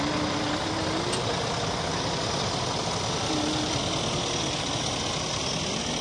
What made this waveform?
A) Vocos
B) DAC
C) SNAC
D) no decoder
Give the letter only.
D